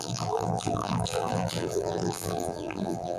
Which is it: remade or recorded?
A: remade